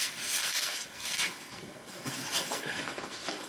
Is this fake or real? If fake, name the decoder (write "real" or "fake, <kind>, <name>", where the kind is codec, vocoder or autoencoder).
fake, codec, SNAC